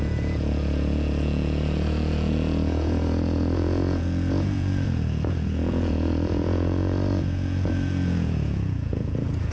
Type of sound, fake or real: fake